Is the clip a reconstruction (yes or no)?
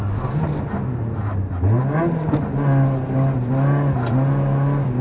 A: no